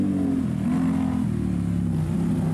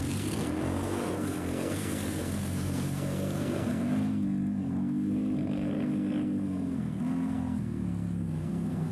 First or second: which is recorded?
first